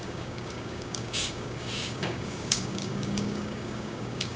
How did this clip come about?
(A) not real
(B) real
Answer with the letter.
A